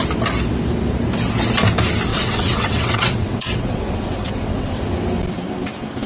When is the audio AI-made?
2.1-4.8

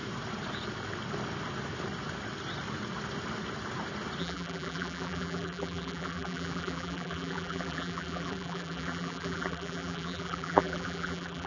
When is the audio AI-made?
4.2-11.5

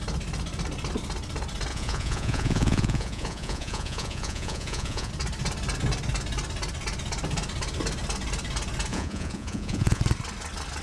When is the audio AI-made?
1.7-5.1; 8.9-10.0